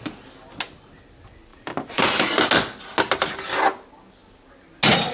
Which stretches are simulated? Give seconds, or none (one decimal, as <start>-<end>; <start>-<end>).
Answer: 1.5-2.5